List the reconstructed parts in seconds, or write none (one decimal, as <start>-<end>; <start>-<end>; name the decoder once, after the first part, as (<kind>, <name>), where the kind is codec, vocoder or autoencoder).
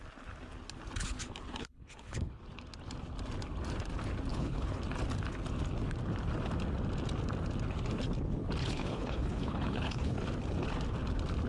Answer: 1.6-2.4 (codec, HILCodec); 4.3-4.8; 8.6-10.2